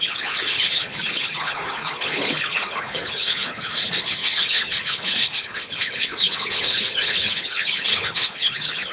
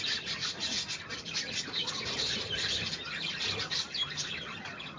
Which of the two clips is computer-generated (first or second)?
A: first